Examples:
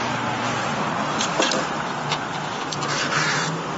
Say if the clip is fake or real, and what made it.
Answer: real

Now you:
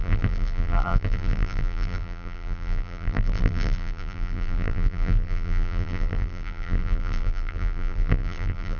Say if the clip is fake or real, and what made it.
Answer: fake, vocoder, BigVGAN v2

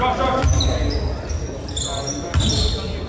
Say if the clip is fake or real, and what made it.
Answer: real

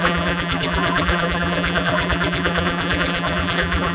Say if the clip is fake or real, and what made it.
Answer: fake, vocoder, BigVGAN v2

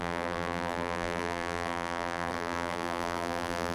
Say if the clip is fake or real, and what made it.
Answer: fake, vocoder, BigVGAN v2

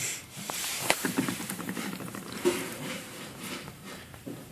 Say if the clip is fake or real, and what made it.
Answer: fake, vocoder, BigVGAN v2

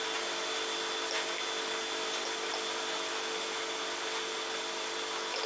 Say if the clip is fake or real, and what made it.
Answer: real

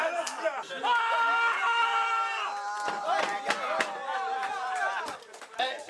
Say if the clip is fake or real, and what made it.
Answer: real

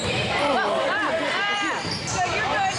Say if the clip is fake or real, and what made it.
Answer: fake, vocoder, BigVGAN v2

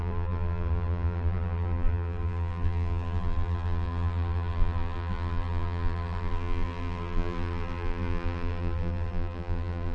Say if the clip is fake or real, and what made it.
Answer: fake, vocoder, BigVGAN v2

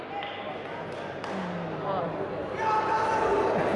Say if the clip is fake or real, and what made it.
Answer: real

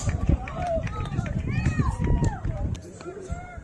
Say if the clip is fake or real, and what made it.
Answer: fake, vocoder, BigVGAN v2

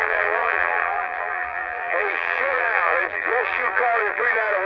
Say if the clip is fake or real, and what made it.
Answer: fake, vocoder, BigVGAN v2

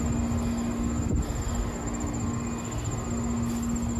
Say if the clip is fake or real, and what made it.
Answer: real